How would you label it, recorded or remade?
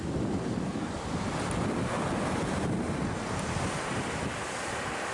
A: remade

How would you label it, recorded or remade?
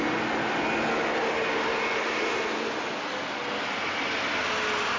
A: recorded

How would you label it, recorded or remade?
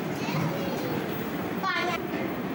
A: recorded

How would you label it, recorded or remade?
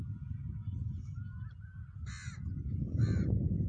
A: recorded